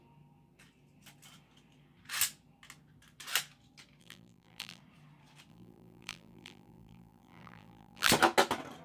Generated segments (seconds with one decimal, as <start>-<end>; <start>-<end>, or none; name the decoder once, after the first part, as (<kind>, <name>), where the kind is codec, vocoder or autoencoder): 4.0-4.8 (vocoder, BigVGAN v2); 5.5-8.1